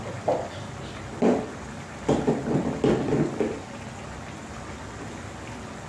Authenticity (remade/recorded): recorded